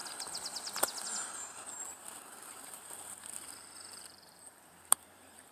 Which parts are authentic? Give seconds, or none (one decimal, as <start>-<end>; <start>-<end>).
0.0-1.9